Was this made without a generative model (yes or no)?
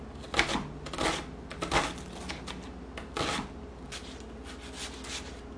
yes